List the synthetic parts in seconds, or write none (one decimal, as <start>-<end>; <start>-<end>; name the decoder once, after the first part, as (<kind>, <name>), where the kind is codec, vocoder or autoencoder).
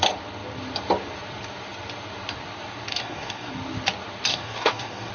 2.9-3.5 (codec, DAC); 4.3-5.1